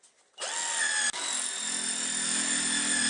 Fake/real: real